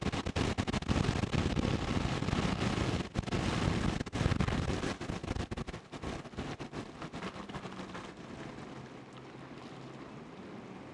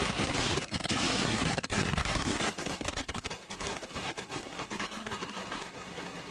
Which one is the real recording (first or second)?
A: first